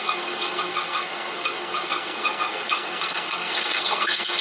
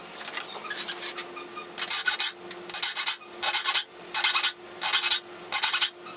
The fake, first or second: first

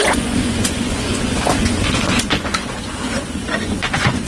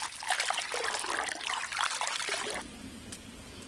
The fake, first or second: first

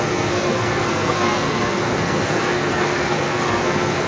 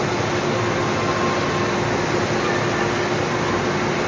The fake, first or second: first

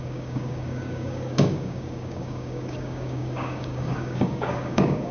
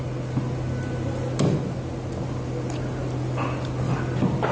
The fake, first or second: first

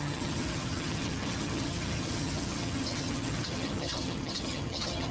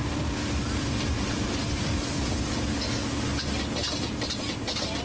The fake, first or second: first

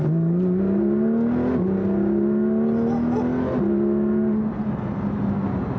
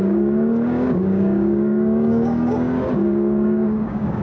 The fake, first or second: second